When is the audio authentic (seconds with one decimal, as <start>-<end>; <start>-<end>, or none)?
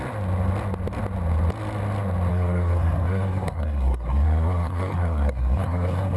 0.0-2.3